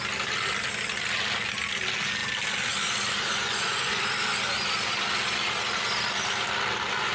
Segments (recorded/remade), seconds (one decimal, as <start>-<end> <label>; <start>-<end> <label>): 0.0-3.3 recorded; 3.3-4.0 remade; 4.0-7.1 recorded